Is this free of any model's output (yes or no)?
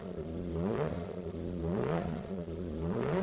no